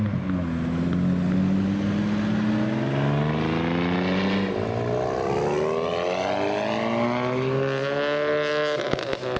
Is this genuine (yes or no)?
yes